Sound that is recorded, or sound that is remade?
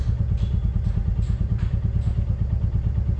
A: recorded